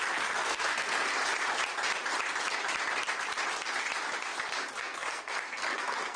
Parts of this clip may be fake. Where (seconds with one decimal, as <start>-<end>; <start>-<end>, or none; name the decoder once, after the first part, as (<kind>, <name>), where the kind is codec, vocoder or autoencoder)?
0.0-1.1 (codec, SNAC); 4.8-6.2